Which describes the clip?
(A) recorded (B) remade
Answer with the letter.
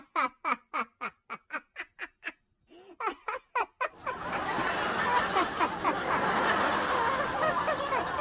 A